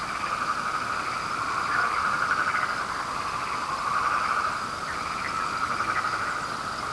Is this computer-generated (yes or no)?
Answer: no